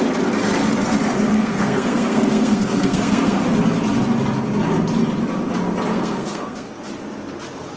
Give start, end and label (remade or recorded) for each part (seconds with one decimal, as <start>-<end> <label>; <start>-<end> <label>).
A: 0.0-1.3 recorded; 1.3-3.4 remade; 3.4-5.9 recorded; 5.9-6.8 remade; 6.8-7.8 recorded